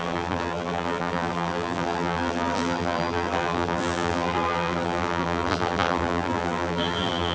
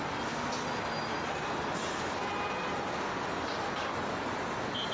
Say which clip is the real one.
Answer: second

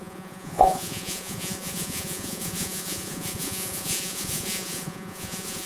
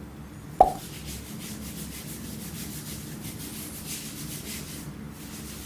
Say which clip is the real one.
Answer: second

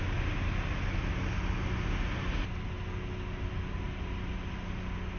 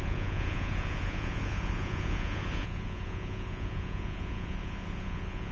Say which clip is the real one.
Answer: first